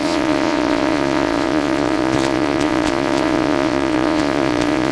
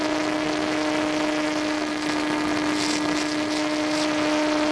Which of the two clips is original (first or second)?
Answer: second